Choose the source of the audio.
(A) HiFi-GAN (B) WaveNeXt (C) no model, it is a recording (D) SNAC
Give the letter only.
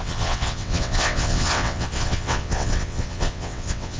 B